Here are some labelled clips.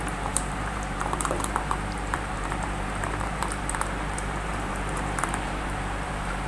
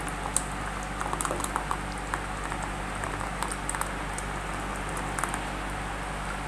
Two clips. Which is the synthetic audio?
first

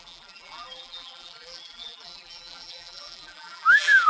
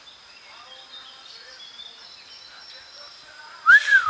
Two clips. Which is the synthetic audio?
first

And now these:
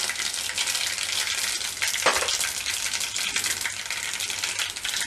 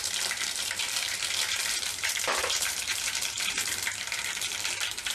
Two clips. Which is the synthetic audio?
second